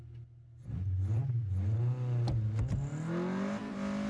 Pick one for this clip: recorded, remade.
recorded